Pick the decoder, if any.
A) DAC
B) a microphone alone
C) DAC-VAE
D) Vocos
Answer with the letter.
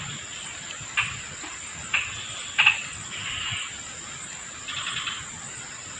B